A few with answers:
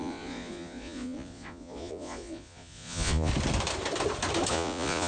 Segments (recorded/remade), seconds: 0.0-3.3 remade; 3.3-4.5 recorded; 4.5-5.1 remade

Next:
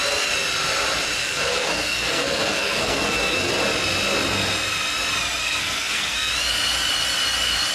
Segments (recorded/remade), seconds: 0.0-1.2 recorded; 1.2-3.5 remade; 3.5-5.4 recorded; 5.4-6.3 remade; 6.3-7.7 recorded

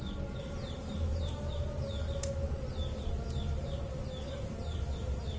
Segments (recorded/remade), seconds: 0.0-5.4 recorded

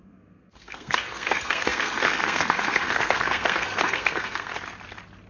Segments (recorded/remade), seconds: 0.0-4.5 remade; 4.5-5.3 recorded

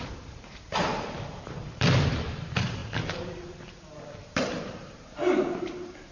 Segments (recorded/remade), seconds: 0.0-6.1 remade

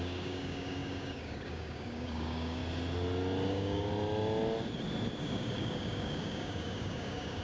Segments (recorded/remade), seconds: 0.0-2.6 remade; 2.6-3.5 recorded; 3.5-3.9 remade; 3.9-5.2 recorded; 5.2-7.4 remade